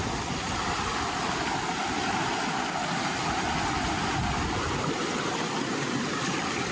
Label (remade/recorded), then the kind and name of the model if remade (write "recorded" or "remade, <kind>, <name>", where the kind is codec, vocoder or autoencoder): recorded